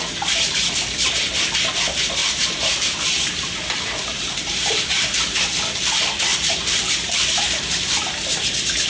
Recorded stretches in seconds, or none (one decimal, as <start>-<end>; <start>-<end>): 0.0-2.2; 5.4-6.3; 8.3-8.9